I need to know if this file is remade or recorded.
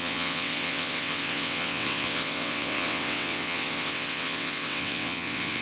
remade